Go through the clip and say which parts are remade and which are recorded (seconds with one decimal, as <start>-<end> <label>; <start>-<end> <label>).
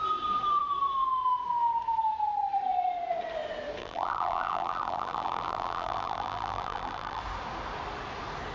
0.0-3.8 recorded; 3.8-7.2 remade; 7.2-8.5 recorded